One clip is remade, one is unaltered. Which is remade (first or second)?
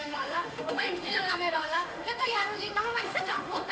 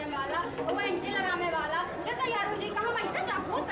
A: first